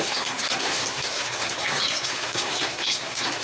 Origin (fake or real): fake